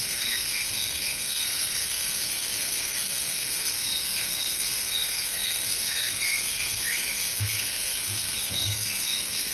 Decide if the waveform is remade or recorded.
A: remade